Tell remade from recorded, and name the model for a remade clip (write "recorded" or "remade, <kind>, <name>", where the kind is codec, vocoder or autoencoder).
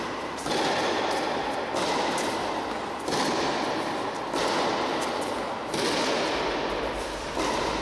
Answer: recorded